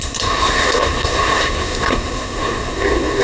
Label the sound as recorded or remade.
remade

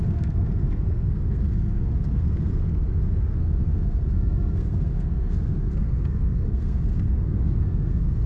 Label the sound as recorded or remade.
remade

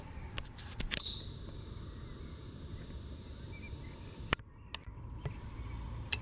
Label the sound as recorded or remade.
recorded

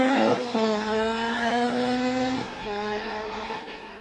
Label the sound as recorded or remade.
remade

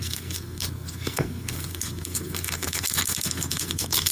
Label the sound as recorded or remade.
remade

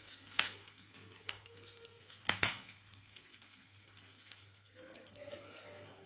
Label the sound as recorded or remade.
remade